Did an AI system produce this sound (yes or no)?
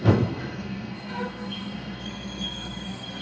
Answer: yes